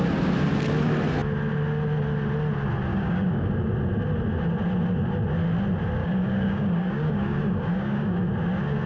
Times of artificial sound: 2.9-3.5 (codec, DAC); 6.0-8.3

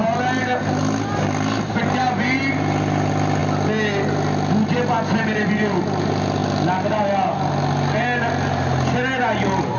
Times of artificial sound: none

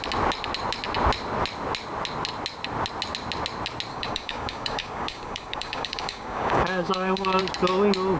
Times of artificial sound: 3.9-7.4 (codec, DAC)

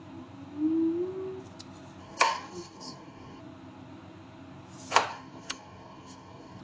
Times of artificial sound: 2.0-3.4 (codec, DAC); 5.1-6.6

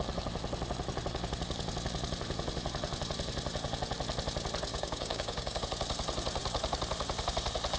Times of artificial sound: 4.7-5.6 (codec, DAC)

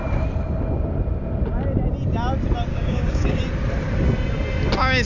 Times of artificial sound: 2.7-3.4 (codec, DAC)

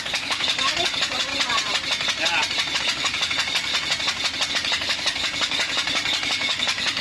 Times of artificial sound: 0.0-1.3 (codec, DAC); 2.8-3.7; 4.5-7.0